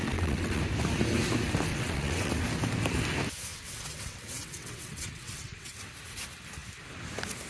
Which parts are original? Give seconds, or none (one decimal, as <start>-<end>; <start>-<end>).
0.6-1.7; 2.3-3.5; 5.9-7.5

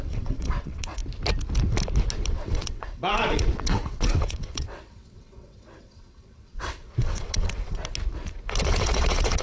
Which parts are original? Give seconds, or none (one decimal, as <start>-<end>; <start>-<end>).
1.0-2.3; 7.8-8.6

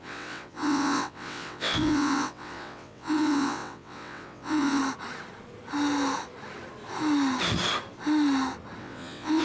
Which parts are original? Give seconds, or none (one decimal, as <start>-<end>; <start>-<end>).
4.8-8.8

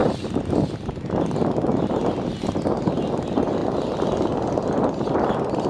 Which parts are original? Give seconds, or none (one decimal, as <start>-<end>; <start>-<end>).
0.0-5.7

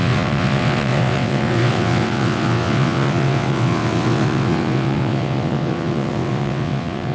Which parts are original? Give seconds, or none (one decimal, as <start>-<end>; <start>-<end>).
none